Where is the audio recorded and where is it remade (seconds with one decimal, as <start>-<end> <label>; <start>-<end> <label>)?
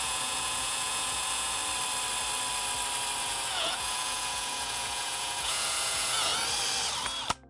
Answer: 0.0-1.6 remade; 1.6-3.2 recorded; 3.2-6.3 remade; 6.3-7.5 recorded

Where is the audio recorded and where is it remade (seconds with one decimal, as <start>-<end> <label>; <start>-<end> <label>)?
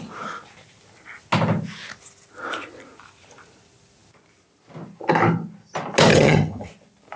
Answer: 0.0-6.1 recorded; 6.1-6.7 remade; 6.7-7.2 recorded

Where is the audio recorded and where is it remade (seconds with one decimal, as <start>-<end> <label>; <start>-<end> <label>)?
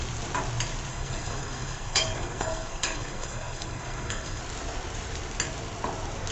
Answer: 0.0-0.9 recorded; 0.9-4.4 remade; 4.4-6.3 recorded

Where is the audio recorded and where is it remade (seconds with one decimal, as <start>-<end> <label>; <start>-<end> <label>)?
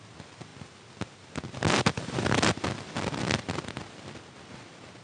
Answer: 0.0-5.0 recorded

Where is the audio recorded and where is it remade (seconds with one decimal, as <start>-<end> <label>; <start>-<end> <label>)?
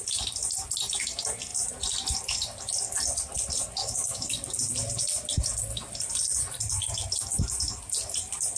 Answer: 0.0-3.8 recorded; 3.8-4.3 remade; 4.3-8.6 recorded